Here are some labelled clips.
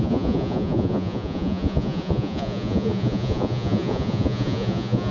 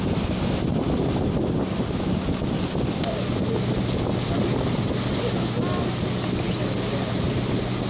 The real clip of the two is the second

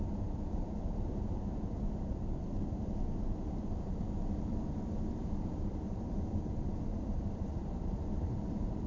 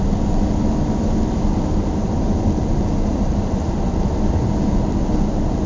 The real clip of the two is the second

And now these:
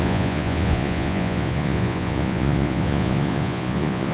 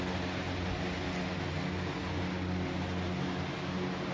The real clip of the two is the second